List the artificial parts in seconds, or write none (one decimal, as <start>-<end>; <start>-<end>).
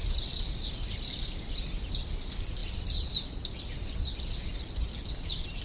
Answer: none